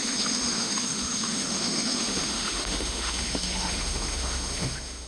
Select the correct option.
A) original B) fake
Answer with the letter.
B